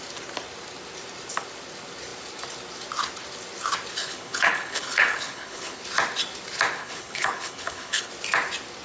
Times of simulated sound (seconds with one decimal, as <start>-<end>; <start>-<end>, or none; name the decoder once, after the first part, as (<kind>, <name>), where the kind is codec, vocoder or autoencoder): 4.0-5.8 (codec, HILCodec); 6.8-8.1